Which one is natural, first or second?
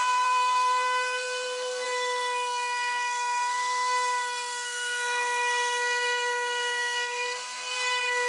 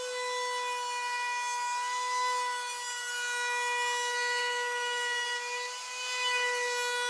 second